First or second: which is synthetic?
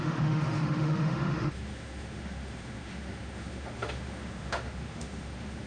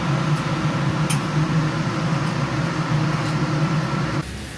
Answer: first